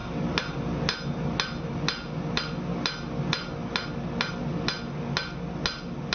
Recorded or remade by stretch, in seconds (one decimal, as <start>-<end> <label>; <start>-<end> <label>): 0.0-6.1 recorded